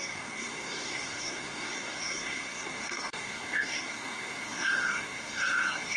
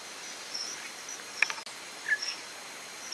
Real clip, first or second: second